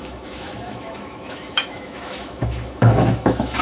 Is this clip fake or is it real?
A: fake